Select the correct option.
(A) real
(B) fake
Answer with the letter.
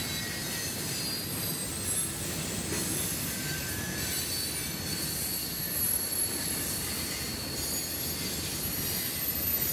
A